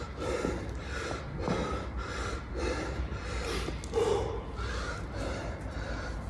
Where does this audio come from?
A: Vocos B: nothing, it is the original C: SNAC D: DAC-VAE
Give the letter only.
B